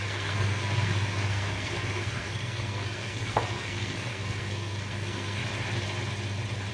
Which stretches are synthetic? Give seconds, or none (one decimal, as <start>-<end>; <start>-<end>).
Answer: 0.0-5.4